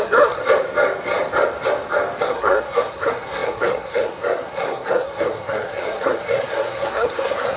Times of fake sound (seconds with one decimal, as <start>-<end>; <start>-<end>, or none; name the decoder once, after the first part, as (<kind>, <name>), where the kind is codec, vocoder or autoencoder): 0.0-0.4 (codec, SNAC); 2.2-7.6